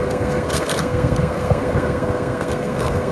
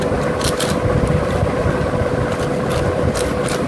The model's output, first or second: first